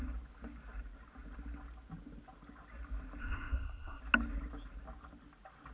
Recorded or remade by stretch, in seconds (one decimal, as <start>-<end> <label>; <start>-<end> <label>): 0.0-3.2 recorded; 3.2-4.0 remade; 4.0-5.7 recorded